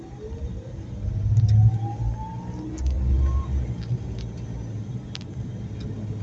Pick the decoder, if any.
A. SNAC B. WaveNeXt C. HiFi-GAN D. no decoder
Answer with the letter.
D